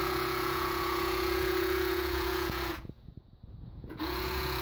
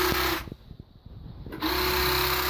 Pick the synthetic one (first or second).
first